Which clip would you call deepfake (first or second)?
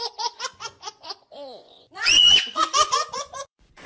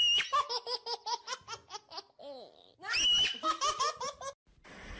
first